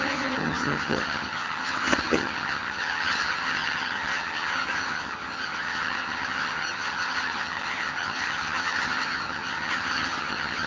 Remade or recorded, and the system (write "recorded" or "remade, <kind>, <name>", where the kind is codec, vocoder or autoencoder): remade, vocoder, HiFi-GAN